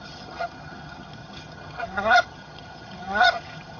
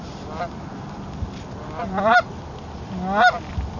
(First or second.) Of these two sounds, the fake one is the first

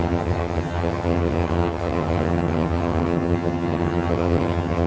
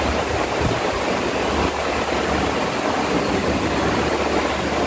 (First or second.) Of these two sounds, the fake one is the first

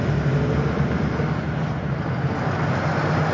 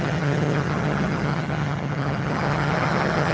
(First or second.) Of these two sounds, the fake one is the second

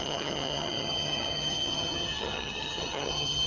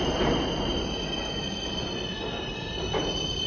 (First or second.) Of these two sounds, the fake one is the first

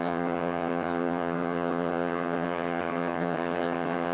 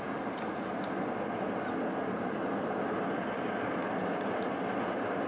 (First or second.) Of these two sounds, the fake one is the first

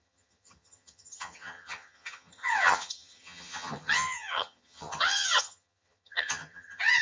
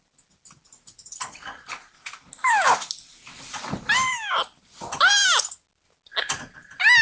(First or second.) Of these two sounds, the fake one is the first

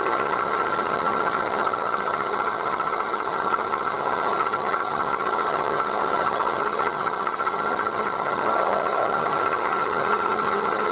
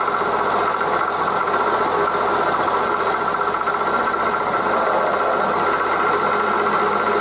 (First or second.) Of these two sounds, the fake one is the first